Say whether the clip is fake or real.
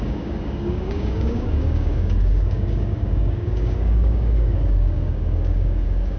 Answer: fake